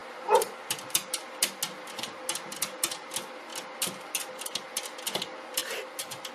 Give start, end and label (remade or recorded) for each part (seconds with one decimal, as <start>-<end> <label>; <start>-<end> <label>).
0.0-6.3 recorded